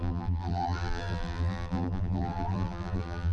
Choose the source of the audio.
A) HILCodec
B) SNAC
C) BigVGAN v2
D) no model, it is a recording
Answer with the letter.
C